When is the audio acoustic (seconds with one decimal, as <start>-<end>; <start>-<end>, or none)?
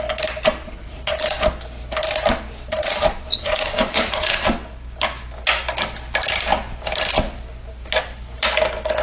0.0-0.6; 1.2-2.7; 4.4-9.0